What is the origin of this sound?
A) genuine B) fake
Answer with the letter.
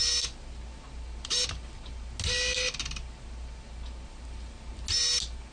A